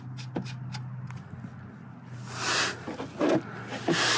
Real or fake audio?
real